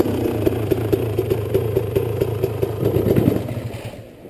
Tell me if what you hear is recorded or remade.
recorded